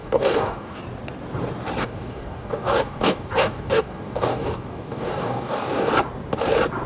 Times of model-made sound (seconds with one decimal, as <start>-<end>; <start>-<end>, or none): 0.0-0.8; 1.8-5.9